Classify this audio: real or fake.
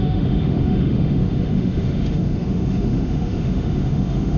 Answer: fake